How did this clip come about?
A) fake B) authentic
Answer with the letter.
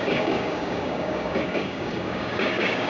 A